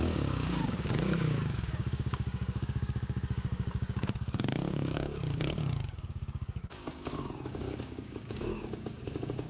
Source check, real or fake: fake